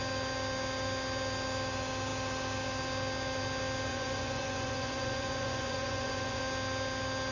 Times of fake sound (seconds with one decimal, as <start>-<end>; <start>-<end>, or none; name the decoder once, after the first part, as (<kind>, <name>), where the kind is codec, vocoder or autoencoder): 3.9-6.4 (vocoder, Vocos)